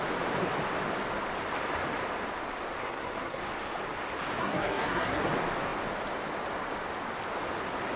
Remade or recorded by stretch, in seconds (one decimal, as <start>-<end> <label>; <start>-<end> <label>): 0.0-2.8 recorded; 2.8-3.4 remade; 3.4-4.4 recorded; 4.4-5.3 remade; 5.3-8.0 recorded